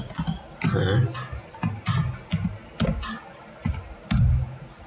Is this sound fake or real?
real